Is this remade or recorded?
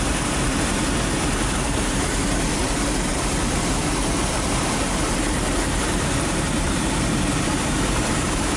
remade